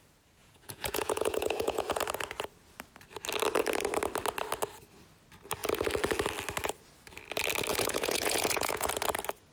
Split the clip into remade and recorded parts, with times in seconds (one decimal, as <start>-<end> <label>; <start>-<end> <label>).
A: 0.0-0.4 recorded; 0.4-2.0 remade; 2.0-7.7 recorded; 7.7-8.9 remade; 8.9-9.5 recorded